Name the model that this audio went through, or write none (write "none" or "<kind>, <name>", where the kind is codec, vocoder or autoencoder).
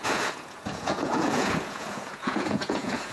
vocoder, Vocos